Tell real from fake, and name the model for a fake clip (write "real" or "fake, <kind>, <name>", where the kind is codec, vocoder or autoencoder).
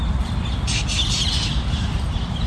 real